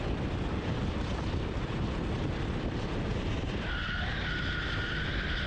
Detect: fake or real real